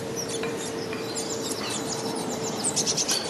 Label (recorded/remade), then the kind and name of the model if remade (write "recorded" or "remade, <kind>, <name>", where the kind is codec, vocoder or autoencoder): remade, vocoder, BigVGAN v2